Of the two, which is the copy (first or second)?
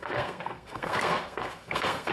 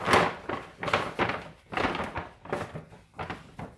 first